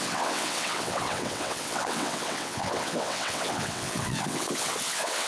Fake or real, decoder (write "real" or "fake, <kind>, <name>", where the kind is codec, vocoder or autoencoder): fake, vocoder, WaveNeXt